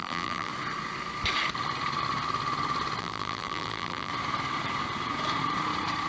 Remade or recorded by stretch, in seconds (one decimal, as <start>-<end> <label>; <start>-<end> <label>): 0.0-0.5 remade; 0.5-3.0 recorded; 3.0-4.1 remade; 4.1-6.1 recorded